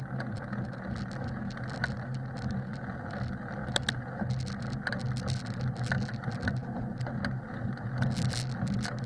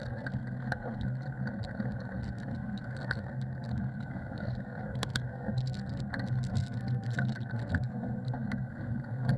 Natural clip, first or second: first